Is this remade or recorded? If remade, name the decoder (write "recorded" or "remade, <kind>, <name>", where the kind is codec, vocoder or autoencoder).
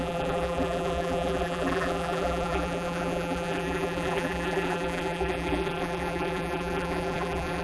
remade, vocoder, BigVGAN v2